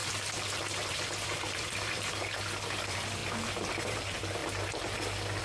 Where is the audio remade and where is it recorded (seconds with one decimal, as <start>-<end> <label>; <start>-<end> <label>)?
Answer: 0.0-0.5 recorded; 0.5-3.2 remade; 3.2-3.8 recorded; 3.8-4.4 remade; 4.4-5.4 recorded